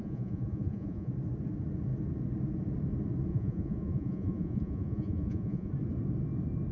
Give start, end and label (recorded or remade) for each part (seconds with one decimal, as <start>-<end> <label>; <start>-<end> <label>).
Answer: 0.0-1.1 remade; 1.1-3.3 recorded; 3.3-5.7 remade; 5.7-6.7 recorded